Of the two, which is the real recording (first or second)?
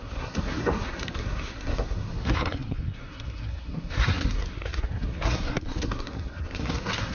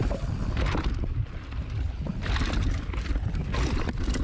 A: second